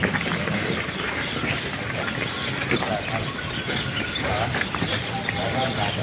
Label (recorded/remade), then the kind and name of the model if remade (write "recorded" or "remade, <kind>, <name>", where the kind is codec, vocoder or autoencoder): recorded